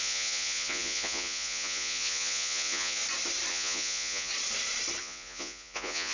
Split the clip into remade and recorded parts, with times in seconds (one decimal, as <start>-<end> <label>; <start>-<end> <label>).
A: 0.0-3.0 remade; 3.0-3.5 recorded; 3.5-4.3 remade; 4.3-5.0 recorded; 5.0-6.1 remade